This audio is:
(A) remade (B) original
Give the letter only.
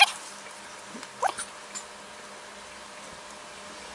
B